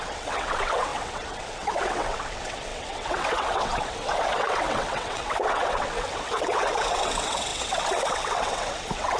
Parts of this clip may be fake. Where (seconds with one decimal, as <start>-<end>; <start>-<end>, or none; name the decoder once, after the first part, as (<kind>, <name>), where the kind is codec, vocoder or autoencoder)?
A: 0.0-9.2 (vocoder, WaveNeXt)